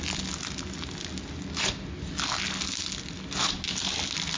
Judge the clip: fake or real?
real